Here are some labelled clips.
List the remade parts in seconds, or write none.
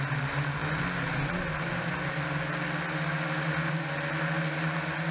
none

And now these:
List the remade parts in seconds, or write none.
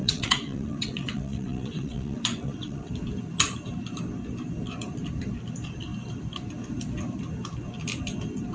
0.0-2.9 (vocoder, WaveNeXt)